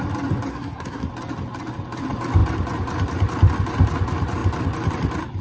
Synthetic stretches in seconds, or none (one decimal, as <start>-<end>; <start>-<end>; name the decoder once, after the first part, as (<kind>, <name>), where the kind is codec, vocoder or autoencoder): 0.5-1.1 (codec, SNAC)